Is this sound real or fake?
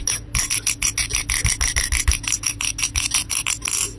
real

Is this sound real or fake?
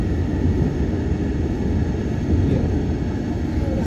real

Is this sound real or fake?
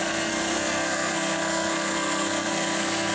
fake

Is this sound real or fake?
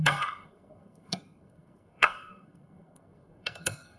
fake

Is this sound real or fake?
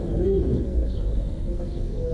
fake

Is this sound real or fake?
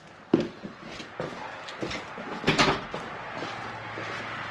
real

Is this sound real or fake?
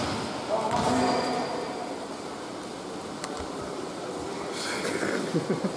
real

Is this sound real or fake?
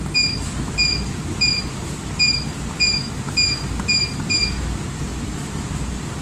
real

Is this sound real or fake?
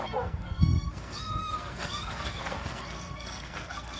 fake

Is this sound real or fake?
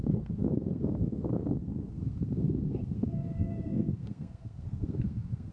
fake